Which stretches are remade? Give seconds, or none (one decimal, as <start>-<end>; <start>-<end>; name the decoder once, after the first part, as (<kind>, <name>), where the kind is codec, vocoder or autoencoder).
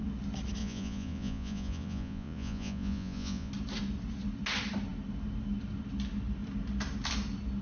0.6-3.5 (vocoder, Vocos)